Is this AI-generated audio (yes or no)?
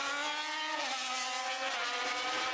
no